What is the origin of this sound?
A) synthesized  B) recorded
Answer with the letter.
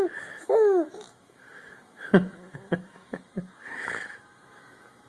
A